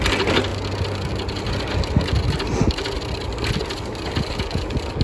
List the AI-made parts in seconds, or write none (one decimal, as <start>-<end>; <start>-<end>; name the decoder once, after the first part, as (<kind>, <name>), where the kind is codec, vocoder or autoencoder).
none